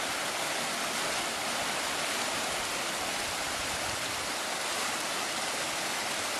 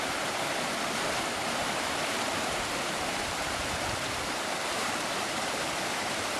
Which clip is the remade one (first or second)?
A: second